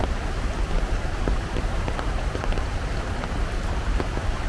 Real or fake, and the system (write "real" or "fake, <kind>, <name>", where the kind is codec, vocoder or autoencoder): real